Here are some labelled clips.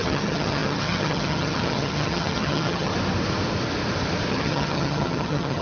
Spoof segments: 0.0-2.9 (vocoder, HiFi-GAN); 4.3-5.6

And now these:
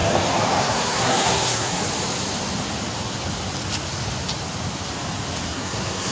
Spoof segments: 0.6-1.8 (codec, SNAC); 5.5-6.1

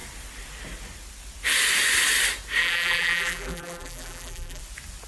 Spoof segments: 2.6-4.6 (vocoder, BigVGAN v2)

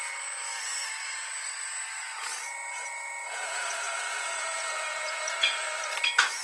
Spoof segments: 2.0-5.6 (vocoder, Vocos)

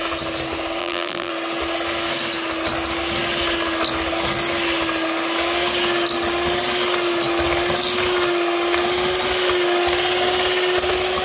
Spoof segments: 0.8-1.3 (vocoder, BigVGAN v2)

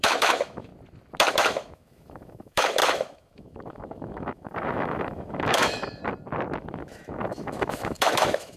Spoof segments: 0.0-0.7 (autoencoder, DAC-VAE); 1.3-6.0; 6.7-8.6

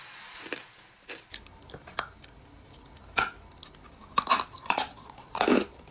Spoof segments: 4.6-5.4 (vocoder, Vocos)

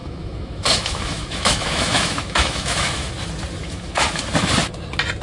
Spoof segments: 0.0-3.1 (autoencoder, DAC-VAE); 3.6-4.2